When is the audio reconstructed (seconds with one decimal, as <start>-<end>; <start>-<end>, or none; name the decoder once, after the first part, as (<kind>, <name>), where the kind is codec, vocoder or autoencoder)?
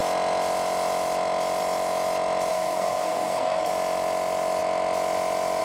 2.5-3.7 (codec, SNAC)